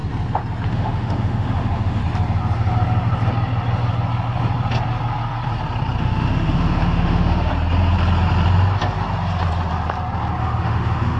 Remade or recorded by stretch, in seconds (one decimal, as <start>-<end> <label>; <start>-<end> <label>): 0.0-0.7 recorded; 0.7-2.0 remade; 2.0-6.0 recorded; 6.0-7.5 remade; 7.5-10.4 recorded; 10.4-11.2 remade